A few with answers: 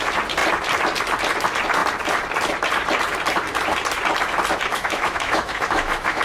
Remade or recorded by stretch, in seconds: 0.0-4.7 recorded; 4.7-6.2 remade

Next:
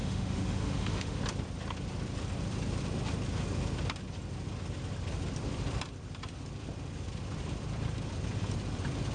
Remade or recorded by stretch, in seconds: 0.0-1.2 remade; 1.2-9.1 recorded

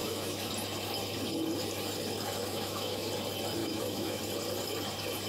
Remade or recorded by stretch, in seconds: 0.0-0.5 remade; 0.5-2.5 recorded; 2.5-3.1 remade; 3.1-3.6 recorded; 3.6-4.2 remade; 4.2-5.3 recorded

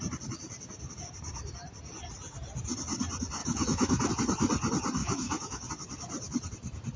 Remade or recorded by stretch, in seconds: 0.0-3.4 recorded; 3.4-4.1 remade; 4.1-5.0 recorded; 5.0-5.7 remade; 5.7-7.0 recorded

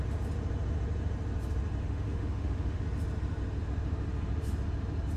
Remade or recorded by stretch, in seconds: 0.0-1.8 recorded; 1.8-2.8 remade; 2.8-5.2 recorded

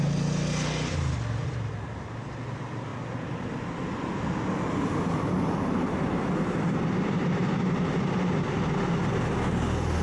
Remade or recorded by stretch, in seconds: 0.0-10.0 recorded

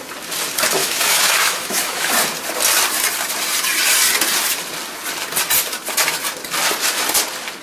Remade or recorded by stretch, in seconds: 0.0-0.8 recorded; 0.8-2.1 remade; 2.1-7.6 recorded

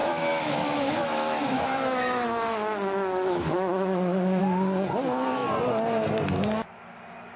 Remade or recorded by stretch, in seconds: 0.0-4.4 remade; 4.4-7.4 recorded